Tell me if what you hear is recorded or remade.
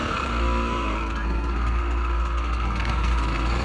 remade